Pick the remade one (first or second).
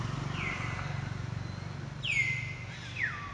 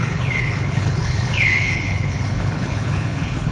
second